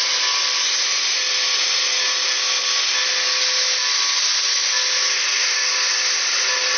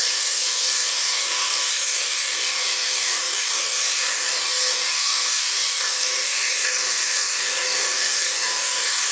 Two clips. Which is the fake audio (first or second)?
second